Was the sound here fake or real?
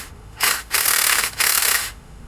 fake